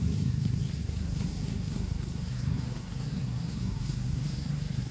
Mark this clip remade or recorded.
remade